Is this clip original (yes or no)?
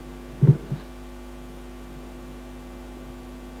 yes